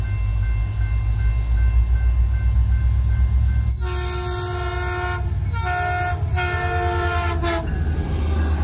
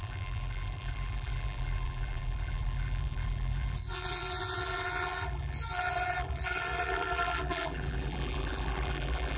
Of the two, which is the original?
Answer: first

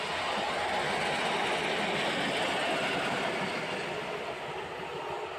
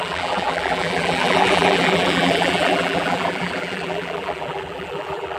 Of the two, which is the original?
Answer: first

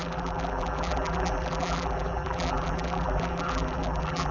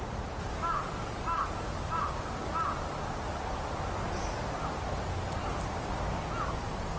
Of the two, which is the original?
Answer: second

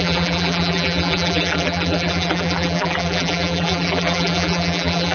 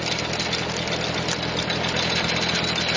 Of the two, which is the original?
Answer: second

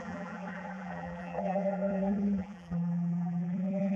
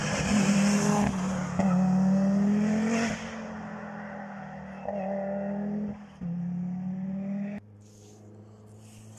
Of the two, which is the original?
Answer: second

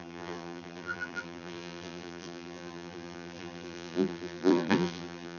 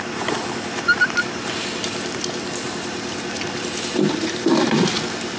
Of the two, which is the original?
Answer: second